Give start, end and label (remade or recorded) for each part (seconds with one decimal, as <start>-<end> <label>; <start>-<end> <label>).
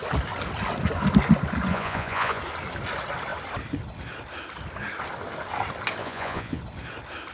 0.0-1.7 recorded; 1.7-2.4 remade; 2.4-6.0 recorded; 6.0-6.6 remade; 6.6-7.3 recorded